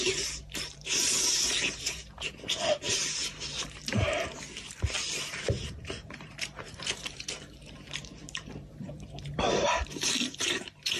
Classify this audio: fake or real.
fake